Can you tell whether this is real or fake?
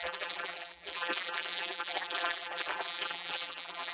fake